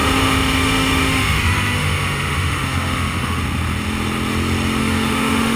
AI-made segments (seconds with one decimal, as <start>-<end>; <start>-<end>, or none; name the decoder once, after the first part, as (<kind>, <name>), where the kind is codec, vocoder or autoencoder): 0.0-3.4 (autoencoder, DAC-VAE); 4.8-5.6